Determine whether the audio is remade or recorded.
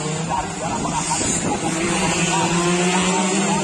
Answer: recorded